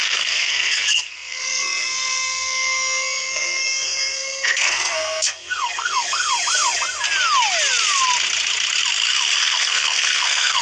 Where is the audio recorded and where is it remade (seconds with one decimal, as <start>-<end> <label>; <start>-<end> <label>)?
0.0-6.3 remade; 6.3-9.4 recorded; 9.4-10.6 remade